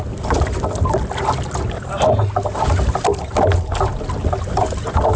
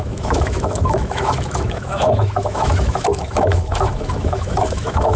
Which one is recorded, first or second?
first